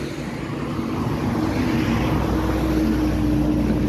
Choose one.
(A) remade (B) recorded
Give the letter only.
B